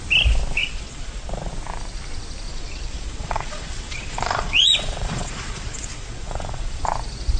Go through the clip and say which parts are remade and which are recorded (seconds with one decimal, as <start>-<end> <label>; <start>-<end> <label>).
0.0-0.6 recorded; 0.6-1.5 remade; 1.5-2.5 recorded; 2.5-6.8 remade; 6.8-7.4 recorded